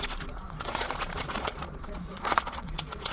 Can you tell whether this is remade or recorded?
remade